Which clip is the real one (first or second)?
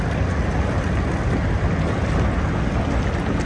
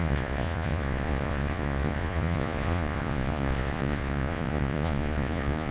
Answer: first